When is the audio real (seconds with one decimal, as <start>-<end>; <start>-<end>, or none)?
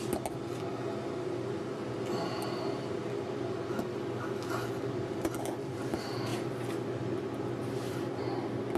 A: 0.0-1.7; 3.0-8.8